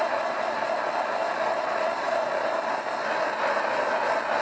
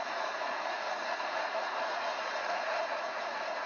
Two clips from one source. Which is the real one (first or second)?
first